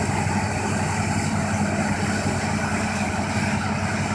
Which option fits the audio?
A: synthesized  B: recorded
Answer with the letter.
B